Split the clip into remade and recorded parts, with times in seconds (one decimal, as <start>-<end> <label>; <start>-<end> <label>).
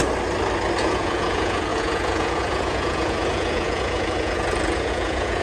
0.0-0.8 recorded; 0.8-5.4 remade